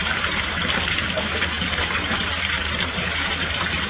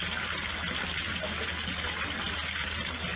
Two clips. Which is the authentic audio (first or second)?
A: second